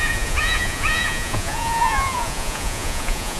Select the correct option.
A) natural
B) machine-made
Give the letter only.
B